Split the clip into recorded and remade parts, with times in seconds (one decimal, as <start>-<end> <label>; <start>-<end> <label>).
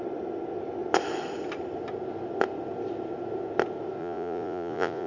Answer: 0.0-4.0 recorded; 4.0-5.1 remade